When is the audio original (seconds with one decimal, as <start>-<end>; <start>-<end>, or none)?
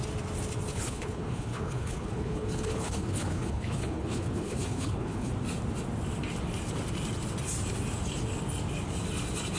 0.0-0.7; 5.3-9.6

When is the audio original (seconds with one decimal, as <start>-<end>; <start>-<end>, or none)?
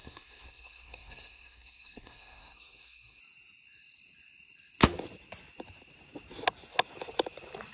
3.2-7.7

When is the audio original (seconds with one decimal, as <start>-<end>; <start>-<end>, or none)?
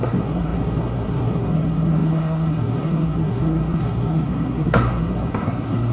none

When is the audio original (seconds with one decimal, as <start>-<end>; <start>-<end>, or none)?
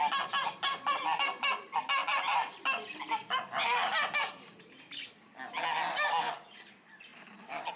0.0-7.8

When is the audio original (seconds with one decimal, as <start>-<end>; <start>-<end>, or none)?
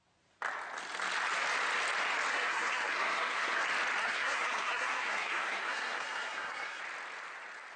0.0-2.3; 3.6-4.0; 6.8-7.8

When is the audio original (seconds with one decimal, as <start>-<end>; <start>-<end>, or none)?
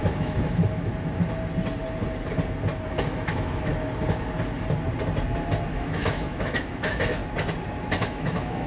0.9-2.9; 3.7-5.7; 7.2-7.8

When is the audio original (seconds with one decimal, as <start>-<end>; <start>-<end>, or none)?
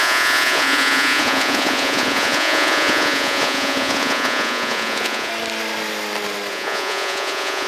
5.3-6.5